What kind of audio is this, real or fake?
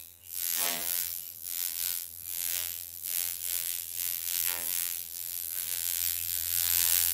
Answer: fake